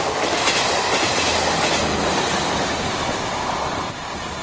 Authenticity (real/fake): real